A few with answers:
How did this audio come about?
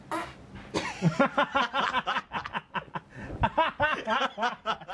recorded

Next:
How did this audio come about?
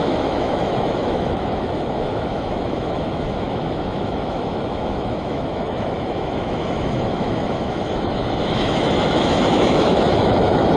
remade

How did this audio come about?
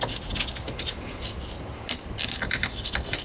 recorded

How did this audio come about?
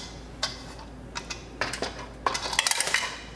recorded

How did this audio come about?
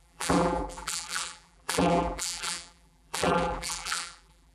remade